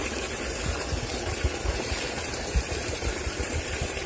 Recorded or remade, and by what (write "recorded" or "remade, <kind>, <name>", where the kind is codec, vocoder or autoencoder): remade, vocoder, BigVGAN v2